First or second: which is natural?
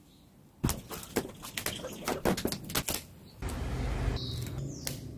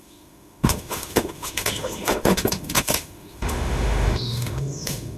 first